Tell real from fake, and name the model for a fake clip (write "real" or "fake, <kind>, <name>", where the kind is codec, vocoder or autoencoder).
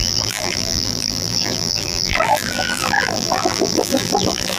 fake, vocoder, BigVGAN v2